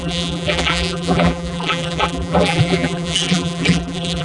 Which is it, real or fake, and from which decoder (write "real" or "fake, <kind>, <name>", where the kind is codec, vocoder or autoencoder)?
fake, vocoder, BigVGAN v2